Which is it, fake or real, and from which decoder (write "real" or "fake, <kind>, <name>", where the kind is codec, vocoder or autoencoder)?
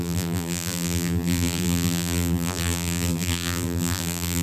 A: fake, vocoder, BigVGAN v2